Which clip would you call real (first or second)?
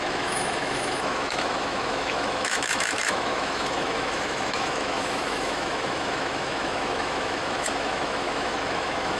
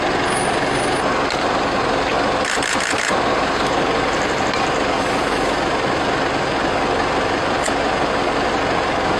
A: second